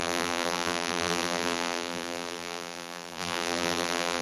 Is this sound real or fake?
fake